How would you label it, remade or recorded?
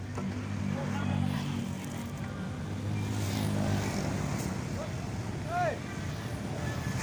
recorded